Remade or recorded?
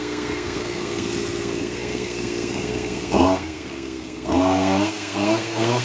remade